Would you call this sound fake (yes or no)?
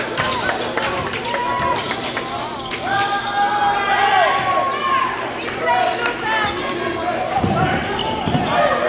no